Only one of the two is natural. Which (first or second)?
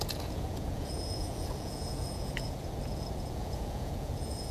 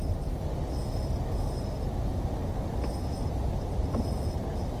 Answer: second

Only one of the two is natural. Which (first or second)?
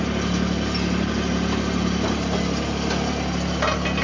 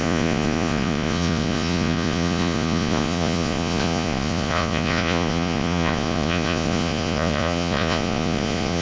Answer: first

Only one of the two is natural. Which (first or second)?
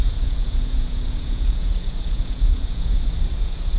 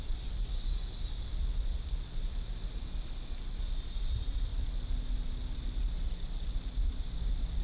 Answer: second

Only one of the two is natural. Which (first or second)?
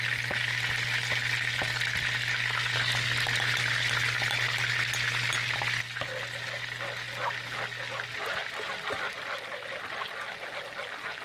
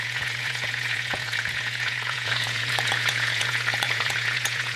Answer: first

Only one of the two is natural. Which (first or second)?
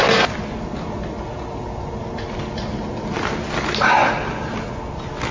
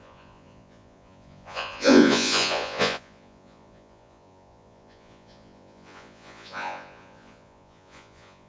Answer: first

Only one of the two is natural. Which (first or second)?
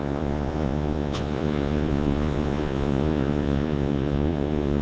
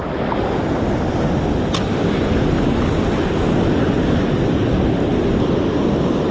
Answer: second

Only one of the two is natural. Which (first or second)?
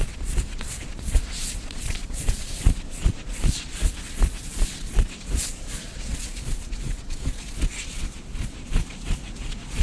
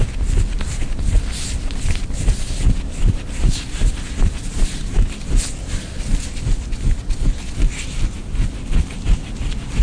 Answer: second